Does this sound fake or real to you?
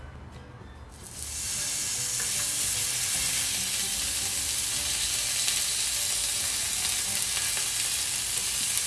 real